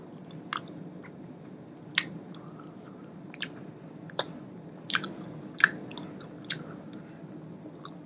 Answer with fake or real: real